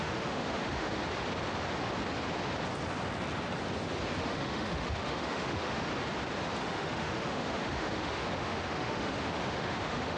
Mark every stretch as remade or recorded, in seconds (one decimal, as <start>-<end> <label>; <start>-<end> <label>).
0.0-1.0 remade; 1.0-4.2 recorded; 4.2-5.9 remade; 5.9-6.6 recorded; 6.6-10.2 remade